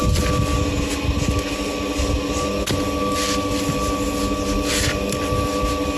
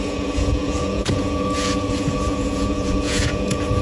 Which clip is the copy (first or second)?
second